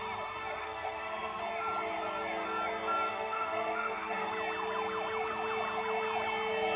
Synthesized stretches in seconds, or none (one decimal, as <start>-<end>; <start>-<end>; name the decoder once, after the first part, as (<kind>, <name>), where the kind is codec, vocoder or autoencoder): 0.6-1.4 (codec, SNAC); 3.1-4.3